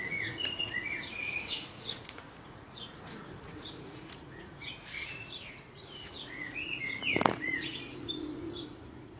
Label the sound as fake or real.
fake